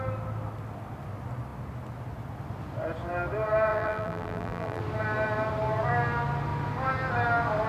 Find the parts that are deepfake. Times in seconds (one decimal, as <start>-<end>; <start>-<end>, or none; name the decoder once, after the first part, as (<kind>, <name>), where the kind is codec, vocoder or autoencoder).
3.7-4.8 (vocoder, BigVGAN v2)